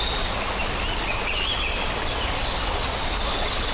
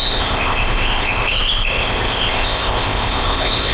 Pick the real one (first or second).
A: first